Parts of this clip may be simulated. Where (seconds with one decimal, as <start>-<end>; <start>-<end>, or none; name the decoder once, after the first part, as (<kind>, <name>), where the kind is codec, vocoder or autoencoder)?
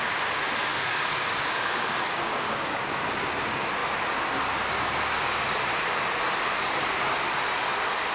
0.7-2.8 (codec, DAC)